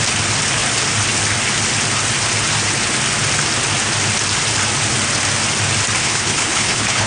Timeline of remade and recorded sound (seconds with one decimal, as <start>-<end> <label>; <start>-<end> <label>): 0.0-6.0 recorded; 6.0-7.1 remade